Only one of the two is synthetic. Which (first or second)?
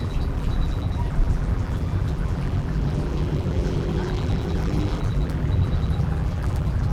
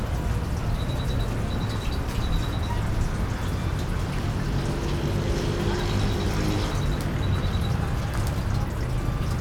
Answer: first